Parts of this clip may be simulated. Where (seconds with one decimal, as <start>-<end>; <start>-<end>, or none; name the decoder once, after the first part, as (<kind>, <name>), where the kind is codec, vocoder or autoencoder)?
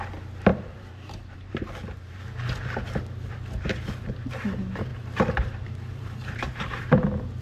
0.5-2.2 (vocoder, BigVGAN v2); 4.9-6.5